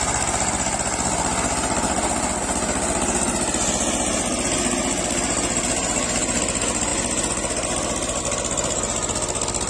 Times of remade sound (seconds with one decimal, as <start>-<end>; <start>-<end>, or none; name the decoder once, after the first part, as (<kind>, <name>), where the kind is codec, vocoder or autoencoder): none